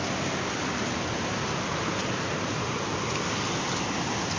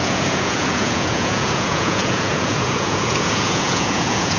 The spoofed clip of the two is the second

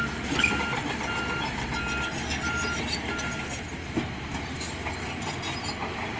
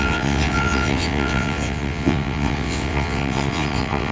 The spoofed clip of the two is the second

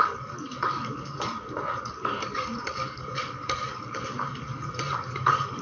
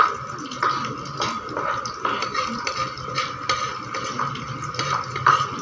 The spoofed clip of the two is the first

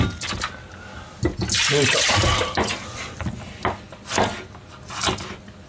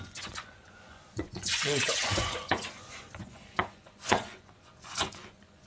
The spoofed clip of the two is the second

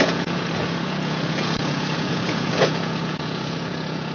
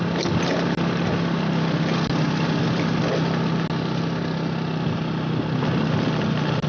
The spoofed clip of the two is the first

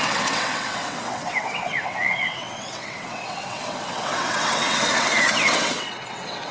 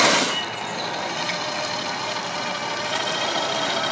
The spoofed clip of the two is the first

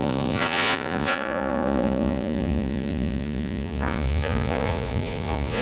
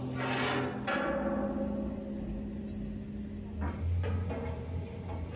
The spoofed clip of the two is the first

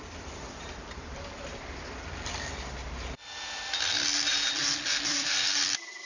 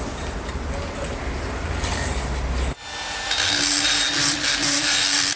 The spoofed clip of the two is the first